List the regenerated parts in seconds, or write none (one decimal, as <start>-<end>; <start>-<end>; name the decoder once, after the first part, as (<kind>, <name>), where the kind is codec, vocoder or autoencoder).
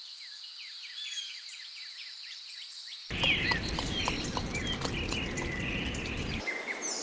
none